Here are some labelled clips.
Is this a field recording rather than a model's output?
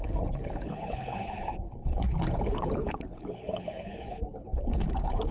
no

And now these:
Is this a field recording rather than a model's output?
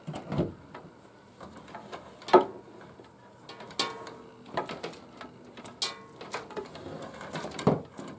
yes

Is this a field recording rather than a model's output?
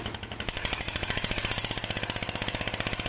yes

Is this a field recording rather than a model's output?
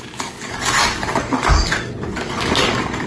no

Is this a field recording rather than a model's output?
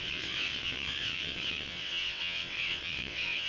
no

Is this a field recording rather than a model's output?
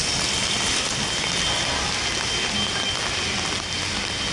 yes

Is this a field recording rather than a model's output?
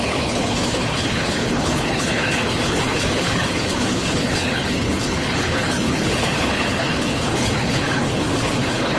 no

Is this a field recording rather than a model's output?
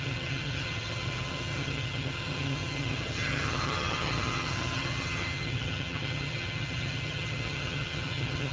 no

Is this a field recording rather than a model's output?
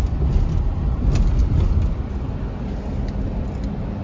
yes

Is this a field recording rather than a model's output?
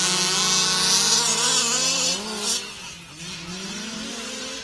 yes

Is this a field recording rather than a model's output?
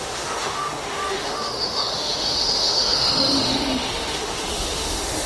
no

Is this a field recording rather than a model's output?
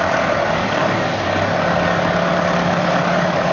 no